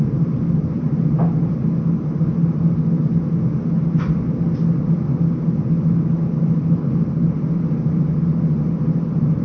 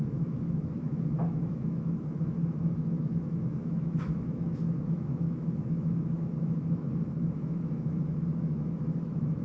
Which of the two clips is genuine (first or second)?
first